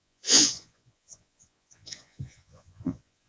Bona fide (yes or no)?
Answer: no